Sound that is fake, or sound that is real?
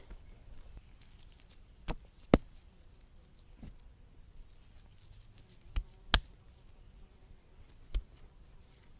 real